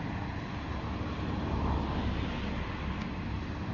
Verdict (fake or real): real